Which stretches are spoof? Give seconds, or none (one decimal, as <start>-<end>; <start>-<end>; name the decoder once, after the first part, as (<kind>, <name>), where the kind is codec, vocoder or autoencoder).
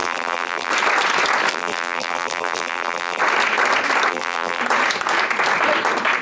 0.0-0.7 (vocoder, BigVGAN v2); 1.5-3.2; 4.1-4.6